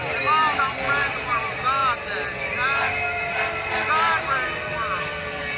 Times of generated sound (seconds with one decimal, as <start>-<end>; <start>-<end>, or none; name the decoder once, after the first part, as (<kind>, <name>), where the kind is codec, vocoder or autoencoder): none